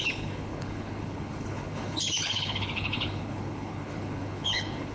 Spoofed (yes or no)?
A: yes